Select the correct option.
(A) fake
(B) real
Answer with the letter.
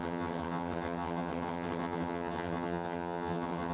A